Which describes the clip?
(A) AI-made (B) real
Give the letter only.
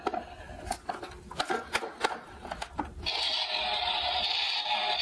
B